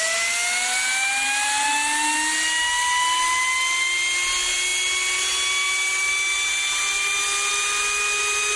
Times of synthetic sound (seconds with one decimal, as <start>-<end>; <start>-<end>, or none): none